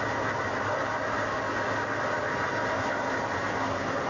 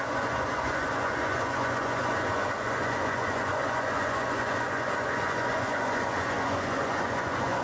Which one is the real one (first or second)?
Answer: first